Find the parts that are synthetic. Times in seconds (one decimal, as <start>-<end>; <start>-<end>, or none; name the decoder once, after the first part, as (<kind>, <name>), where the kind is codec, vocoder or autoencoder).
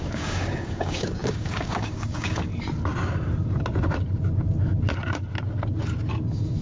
0.0-2.5 (codec, DAC)